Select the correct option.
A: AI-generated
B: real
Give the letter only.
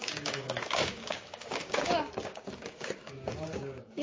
A